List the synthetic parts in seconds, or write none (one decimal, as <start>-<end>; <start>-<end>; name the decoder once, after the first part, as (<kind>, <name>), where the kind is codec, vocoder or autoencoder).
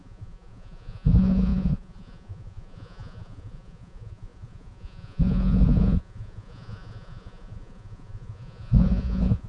0.0-9.5 (vocoder, Vocos)